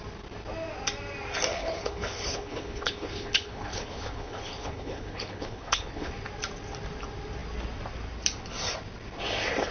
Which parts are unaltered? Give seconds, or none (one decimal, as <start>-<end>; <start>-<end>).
0.0-1.5; 6.1-9.7